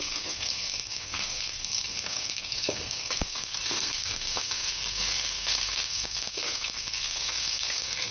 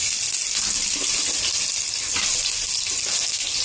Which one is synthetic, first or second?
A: first